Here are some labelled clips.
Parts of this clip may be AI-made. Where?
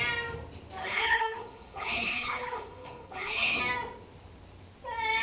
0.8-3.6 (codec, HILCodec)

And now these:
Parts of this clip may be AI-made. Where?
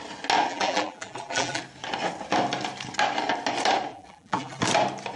0.5-1.6 (vocoder, BigVGAN v2); 3.9-4.6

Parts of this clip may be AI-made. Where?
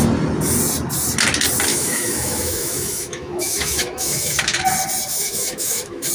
1.7-4.6 (autoencoder, DAC-VAE); 5.1-6.1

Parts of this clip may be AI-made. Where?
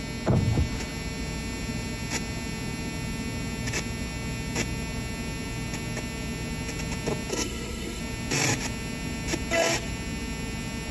7.3-8.0 (codec, SNAC)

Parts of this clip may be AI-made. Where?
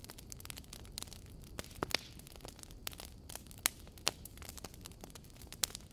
none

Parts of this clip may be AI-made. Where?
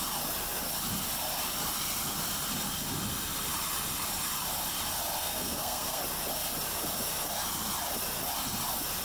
5.2-6.0 (codec, SNAC)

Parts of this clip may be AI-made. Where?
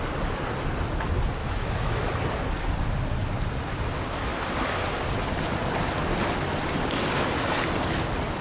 1.4-2.1 (autoencoder, DAC-VAE)